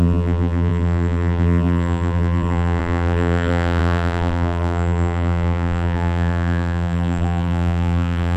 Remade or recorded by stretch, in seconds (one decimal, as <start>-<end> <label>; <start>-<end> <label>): 0.0-8.4 remade

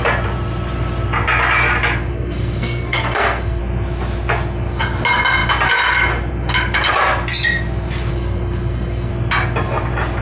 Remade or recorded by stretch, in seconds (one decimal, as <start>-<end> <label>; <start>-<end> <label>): 0.0-2.1 recorded; 2.1-3.6 remade; 3.6-8.1 recorded; 8.1-9.1 remade; 9.1-10.2 recorded